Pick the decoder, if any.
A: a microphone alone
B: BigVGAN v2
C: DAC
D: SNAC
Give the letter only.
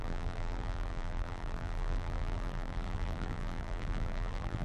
B